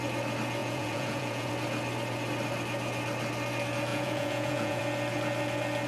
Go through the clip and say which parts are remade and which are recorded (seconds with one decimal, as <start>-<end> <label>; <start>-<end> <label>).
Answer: 0.0-0.6 recorded; 0.6-1.5 remade; 1.5-3.9 recorded; 3.9-4.8 remade; 4.8-5.9 recorded

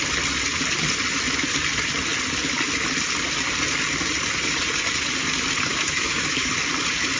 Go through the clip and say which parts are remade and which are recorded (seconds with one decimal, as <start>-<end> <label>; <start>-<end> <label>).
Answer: 0.0-5.7 recorded; 5.7-6.5 remade; 6.5-7.2 recorded

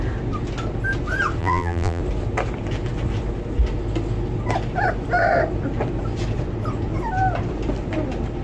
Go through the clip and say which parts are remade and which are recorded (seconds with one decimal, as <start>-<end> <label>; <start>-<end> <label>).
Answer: 0.0-1.4 recorded; 1.4-2.0 remade; 2.0-8.4 recorded

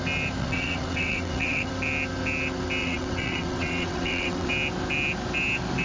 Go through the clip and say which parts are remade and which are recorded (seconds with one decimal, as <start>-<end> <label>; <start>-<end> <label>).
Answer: 0.0-0.4 recorded; 0.4-1.7 remade; 1.7-2.8 recorded; 2.8-4.5 remade; 4.5-5.8 recorded

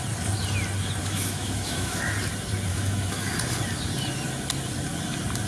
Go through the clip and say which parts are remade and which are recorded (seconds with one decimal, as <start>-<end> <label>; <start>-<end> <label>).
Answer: 0.0-1.0 recorded; 1.0-2.0 remade; 2.0-2.7 recorded; 2.7-3.3 remade; 3.3-5.5 recorded

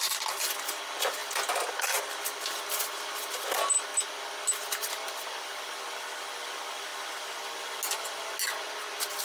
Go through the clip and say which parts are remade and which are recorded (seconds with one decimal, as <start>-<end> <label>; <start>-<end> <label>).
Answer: 0.0-9.2 recorded

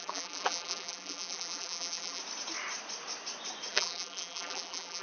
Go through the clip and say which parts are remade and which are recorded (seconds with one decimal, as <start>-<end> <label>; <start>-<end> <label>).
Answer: 0.0-2.2 remade; 2.2-3.7 recorded; 3.7-5.0 remade

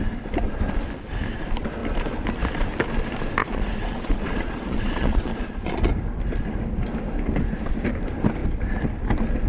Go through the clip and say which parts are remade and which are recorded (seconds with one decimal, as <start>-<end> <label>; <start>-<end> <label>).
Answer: 0.0-3.4 recorded; 3.4-5.9 remade; 5.9-9.5 recorded